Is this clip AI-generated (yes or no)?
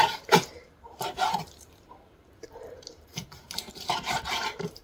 yes